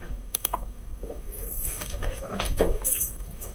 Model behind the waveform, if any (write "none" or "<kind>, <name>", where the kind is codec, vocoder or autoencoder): codec, DAC